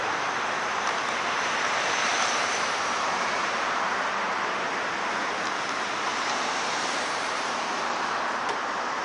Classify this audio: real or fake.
fake